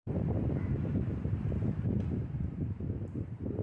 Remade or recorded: remade